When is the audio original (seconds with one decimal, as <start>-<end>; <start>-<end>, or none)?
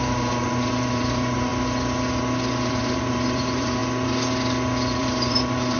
1.5-2.5; 3.8-5.0